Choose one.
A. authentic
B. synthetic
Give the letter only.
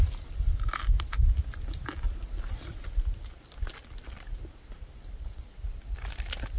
A